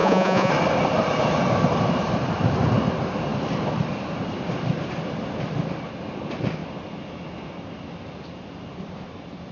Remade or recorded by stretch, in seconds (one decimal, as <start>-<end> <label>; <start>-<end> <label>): 0.0-0.5 remade; 0.5-9.5 recorded